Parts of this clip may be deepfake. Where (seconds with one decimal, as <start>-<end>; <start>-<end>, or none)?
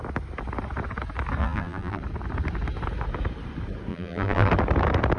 1.4-2.0; 3.9-4.5